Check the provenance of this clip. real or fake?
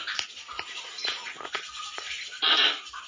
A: real